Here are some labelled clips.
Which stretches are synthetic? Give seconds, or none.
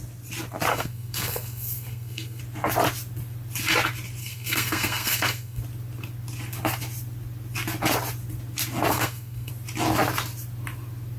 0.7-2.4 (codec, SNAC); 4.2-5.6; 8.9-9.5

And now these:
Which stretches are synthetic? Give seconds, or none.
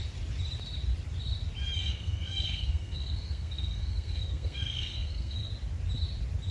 1.8-5.5 (codec, SNAC)